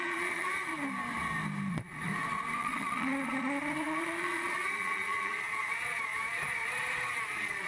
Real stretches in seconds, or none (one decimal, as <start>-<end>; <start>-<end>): 0.7-1.7; 2.1-2.6